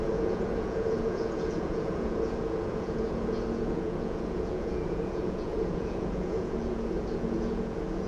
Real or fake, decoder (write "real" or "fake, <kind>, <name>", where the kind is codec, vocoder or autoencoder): fake, vocoder, Vocos